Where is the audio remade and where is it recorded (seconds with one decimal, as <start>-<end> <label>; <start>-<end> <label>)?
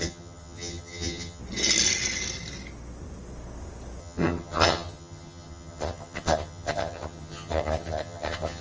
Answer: 0.0-1.4 remade; 1.4-4.0 recorded; 4.0-8.6 remade